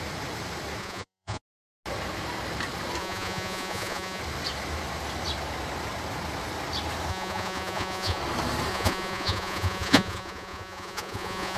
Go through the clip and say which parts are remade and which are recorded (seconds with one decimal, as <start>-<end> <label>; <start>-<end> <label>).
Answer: 0.0-0.8 recorded; 0.8-1.4 remade; 1.4-3.0 recorded; 3.0-4.2 remade; 4.2-7.1 recorded; 7.1-8.2 remade; 8.2-8.7 recorded; 8.7-11.6 remade